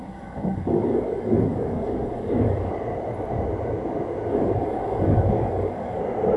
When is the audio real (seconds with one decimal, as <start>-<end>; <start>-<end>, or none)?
2.7-4.3; 6.0-6.4